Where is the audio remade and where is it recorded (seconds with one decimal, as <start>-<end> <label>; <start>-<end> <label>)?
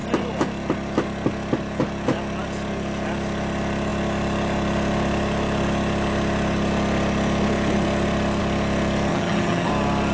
0.0-9.1 recorded; 9.1-9.7 remade; 9.7-10.1 recorded